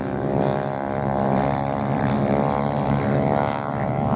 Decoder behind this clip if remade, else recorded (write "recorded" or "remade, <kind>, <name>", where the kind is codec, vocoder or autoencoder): remade, vocoder, BigVGAN v2